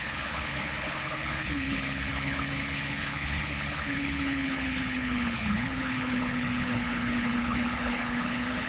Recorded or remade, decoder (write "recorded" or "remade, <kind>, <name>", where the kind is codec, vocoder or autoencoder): remade, codec, HILCodec